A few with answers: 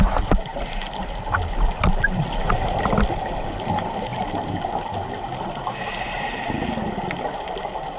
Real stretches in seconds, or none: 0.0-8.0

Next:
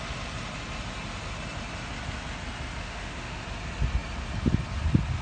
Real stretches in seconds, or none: 0.0-2.8; 3.4-5.2

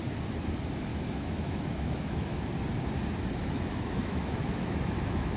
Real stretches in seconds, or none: 0.0-0.9; 2.4-3.4